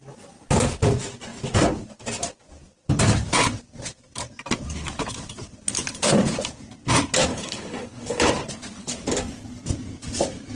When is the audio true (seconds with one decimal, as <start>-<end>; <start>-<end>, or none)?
0.0-7.3; 8.3-10.6